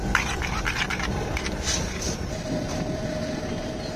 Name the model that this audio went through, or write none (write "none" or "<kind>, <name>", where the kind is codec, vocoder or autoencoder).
vocoder, BigVGAN v2